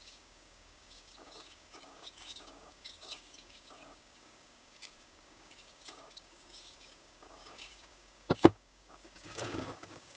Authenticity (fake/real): fake